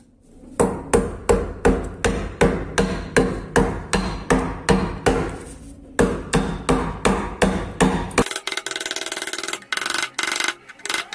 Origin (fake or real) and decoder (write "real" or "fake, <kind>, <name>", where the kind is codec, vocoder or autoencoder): real